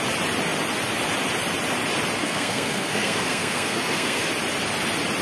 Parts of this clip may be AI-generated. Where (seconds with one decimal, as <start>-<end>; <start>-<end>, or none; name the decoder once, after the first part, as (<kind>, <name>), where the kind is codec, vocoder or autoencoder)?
2.2-4.3 (codec, SNAC)